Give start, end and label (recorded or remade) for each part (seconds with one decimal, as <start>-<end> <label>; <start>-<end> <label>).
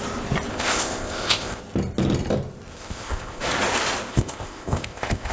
0.0-0.5 recorded; 0.5-1.6 remade; 1.6-2.7 recorded; 2.7-3.4 remade; 3.4-4.1 recorded; 4.1-5.3 remade